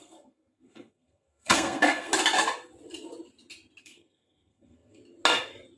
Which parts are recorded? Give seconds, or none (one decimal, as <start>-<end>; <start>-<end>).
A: 2.1-3.8; 5.0-5.8